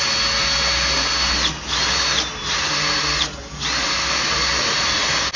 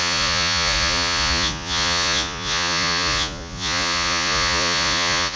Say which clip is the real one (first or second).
first